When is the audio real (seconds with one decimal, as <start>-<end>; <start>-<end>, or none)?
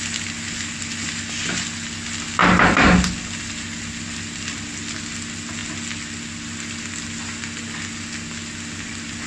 0.0-2.4; 3.4-9.3